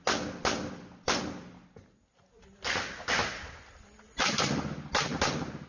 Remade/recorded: recorded